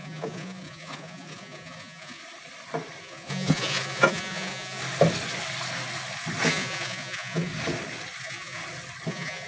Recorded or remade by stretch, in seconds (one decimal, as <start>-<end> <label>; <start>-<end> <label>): 0.0-2.2 remade; 2.2-3.0 recorded; 3.0-4.8 remade; 4.8-6.5 recorded; 6.5-7.5 remade; 7.5-8.2 recorded; 8.2-8.6 remade; 8.6-9.1 recorded; 9.1-9.5 remade